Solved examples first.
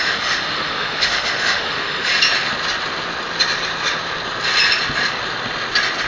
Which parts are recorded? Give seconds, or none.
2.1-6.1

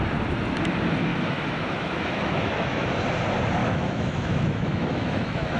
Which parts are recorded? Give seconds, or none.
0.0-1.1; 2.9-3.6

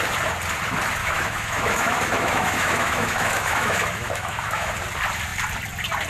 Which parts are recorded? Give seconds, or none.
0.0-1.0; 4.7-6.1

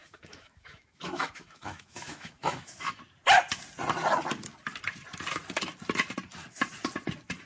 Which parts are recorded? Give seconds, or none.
3.0-7.5

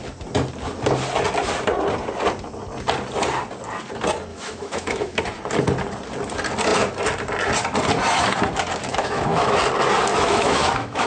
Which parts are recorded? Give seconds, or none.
0.0-4.3; 5.2-8.9; 9.5-10.1

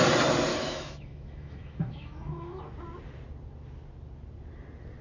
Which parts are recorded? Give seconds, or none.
0.0-0.5; 2.6-5.0